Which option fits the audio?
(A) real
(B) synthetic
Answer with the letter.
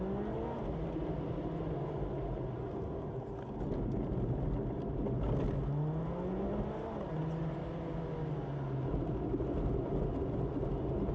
A